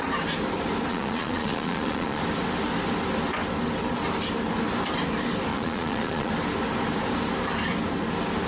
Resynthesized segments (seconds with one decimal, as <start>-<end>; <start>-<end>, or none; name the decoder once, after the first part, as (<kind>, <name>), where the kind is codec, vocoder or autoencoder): 0.9-2.2 (vocoder, Vocos); 5.5-6.3

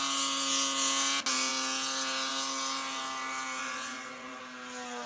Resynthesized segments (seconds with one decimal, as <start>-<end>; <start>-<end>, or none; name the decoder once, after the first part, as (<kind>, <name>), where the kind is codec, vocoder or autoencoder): 3.6-4.4 (vocoder, Vocos)

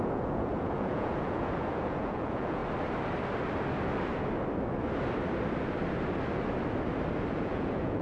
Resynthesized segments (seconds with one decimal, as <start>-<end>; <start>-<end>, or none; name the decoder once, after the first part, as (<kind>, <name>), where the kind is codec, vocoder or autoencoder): 0.0-2.6 (vocoder, Vocos); 7.3-8.0

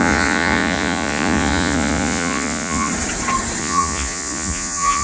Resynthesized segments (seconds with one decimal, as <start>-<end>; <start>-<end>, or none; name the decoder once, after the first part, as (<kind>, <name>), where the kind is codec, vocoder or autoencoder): 0.0-2.9 (vocoder, Vocos); 3.6-5.0

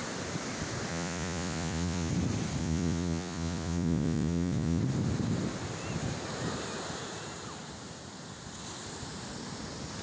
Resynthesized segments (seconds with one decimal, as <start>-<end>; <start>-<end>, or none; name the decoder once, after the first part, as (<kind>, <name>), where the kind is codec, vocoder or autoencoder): 0.9-2.1 (vocoder, Vocos); 2.6-4.8

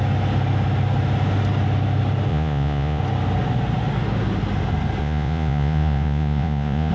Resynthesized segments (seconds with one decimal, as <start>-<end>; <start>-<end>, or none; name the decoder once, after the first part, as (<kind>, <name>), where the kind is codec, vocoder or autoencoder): 2.3-3.0 (vocoder, Vocos); 5.0-6.9

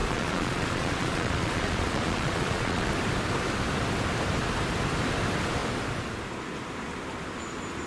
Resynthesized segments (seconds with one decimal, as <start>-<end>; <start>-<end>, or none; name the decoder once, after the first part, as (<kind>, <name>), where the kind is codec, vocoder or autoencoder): 0.0-2.9 (vocoder, Vocos)